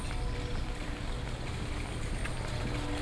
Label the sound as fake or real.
real